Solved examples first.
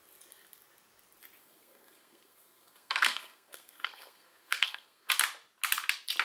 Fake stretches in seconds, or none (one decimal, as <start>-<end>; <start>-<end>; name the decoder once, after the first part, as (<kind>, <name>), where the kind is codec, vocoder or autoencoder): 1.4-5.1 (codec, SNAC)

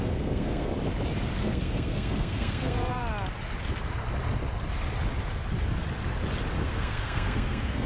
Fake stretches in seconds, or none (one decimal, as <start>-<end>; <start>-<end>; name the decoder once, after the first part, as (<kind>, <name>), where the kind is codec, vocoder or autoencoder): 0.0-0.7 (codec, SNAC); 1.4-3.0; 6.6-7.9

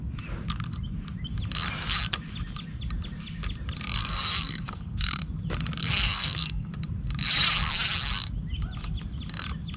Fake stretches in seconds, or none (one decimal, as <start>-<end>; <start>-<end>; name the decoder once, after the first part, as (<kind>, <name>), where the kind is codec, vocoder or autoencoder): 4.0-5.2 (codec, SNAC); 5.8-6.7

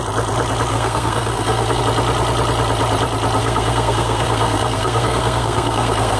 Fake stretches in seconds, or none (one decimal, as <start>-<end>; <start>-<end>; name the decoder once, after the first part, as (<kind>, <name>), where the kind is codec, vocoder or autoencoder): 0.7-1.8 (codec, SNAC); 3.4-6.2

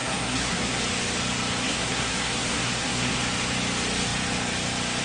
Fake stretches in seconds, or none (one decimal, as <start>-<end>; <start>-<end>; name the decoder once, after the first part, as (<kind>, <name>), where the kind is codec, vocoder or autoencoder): 0.0-0.8 (codec, SNAC); 1.6-3.2